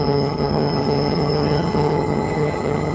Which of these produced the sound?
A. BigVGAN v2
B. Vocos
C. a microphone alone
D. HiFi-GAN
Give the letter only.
D